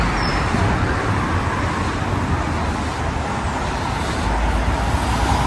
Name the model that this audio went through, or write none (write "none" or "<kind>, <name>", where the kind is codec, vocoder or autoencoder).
none